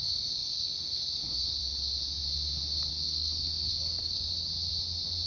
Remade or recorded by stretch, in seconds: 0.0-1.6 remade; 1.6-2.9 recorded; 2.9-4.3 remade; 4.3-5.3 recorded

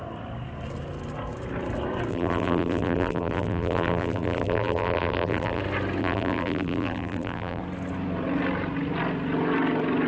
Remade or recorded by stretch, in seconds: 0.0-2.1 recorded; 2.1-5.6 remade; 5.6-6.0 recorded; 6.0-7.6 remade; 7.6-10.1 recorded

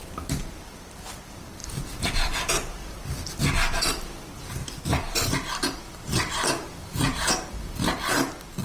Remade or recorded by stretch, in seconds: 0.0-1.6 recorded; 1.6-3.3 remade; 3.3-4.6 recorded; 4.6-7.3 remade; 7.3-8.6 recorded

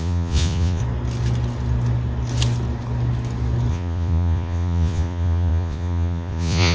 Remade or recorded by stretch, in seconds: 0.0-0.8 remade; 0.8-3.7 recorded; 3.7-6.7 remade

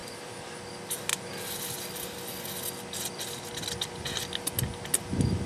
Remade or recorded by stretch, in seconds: 0.0-0.7 remade; 0.7-5.5 recorded

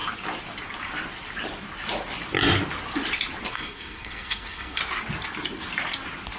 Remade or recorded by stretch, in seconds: 0.0-3.5 recorded; 3.5-4.8 remade; 4.8-6.4 recorded

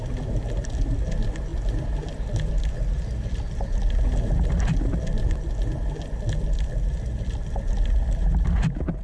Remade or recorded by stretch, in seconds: 0.0-9.0 recorded

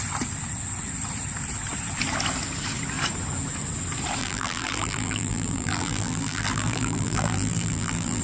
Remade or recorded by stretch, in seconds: 0.0-4.2 recorded; 4.2-8.2 remade